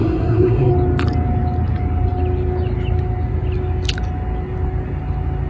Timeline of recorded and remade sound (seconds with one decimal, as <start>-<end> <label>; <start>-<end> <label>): 0.0-0.7 remade; 0.7-5.5 recorded